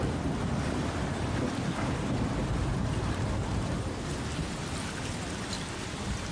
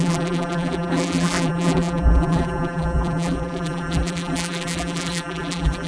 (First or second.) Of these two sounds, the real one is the first